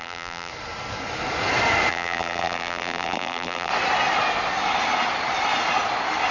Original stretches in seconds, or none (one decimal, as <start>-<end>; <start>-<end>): 0.5-1.9; 3.7-6.3